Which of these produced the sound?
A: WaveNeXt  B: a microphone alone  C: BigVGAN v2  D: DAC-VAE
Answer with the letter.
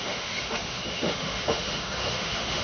D